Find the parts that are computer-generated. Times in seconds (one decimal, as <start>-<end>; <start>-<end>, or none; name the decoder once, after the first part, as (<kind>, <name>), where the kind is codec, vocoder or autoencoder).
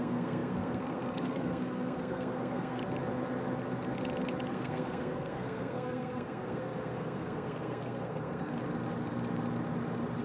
0.0-2.8 (codec, SNAC); 4.5-8.6